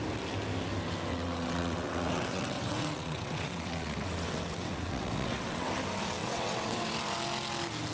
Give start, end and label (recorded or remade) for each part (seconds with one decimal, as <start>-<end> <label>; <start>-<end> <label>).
0.0-1.1 recorded; 1.1-5.7 remade; 5.7-6.2 recorded; 6.2-6.8 remade; 6.8-7.9 recorded